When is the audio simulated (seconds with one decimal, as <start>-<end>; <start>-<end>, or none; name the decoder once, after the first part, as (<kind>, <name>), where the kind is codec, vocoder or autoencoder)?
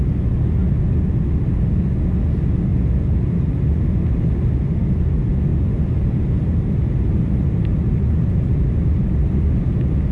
2.7-4.0 (vocoder, BigVGAN v2); 5.5-9.7